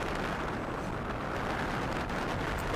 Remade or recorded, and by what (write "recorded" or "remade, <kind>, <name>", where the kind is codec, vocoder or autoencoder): recorded